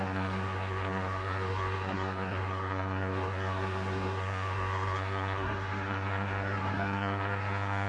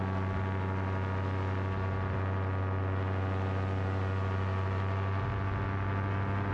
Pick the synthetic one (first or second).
first